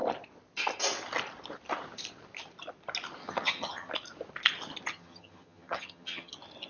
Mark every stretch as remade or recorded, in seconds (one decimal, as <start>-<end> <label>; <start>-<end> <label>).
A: 0.0-3.2 recorded; 3.2-3.9 remade; 3.9-4.9 recorded; 4.9-6.3 remade; 6.3-6.7 recorded